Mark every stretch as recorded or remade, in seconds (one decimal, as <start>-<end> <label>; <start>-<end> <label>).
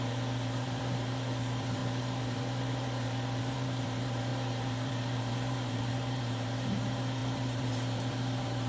0.0-8.7 remade